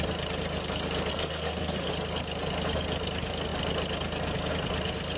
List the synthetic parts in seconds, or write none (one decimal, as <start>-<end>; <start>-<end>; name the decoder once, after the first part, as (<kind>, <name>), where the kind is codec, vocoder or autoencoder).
1.1-1.9 (codec, SNAC)